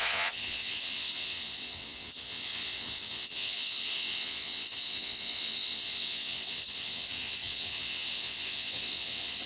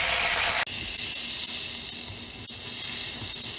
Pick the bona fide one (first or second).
second